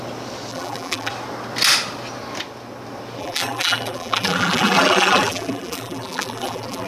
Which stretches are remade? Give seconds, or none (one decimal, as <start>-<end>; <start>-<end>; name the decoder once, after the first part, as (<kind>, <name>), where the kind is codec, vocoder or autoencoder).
0.5-1.1 (vocoder, BigVGAN v2); 3.2-6.9